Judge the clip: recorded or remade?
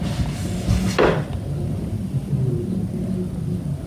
recorded